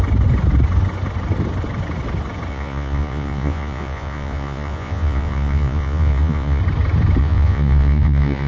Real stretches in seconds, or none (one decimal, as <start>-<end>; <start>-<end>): 0.0-2.5; 6.6-7.2